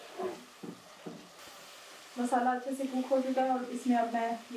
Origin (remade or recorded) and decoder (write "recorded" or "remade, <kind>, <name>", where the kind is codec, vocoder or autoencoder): recorded